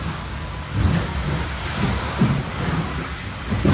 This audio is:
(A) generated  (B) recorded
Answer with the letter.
B